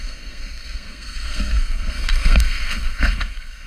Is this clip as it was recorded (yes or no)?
no